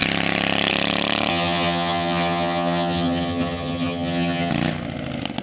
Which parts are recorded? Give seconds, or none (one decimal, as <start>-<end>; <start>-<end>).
0.0-1.3; 4.5-5.4